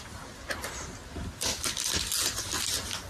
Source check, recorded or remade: recorded